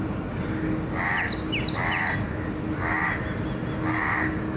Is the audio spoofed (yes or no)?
no